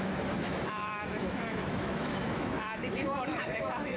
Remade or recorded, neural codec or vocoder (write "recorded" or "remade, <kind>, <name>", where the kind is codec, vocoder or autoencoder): remade, autoencoder, DAC-VAE